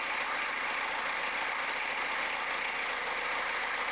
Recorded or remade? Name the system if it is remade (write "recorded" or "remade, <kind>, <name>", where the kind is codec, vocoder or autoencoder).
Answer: recorded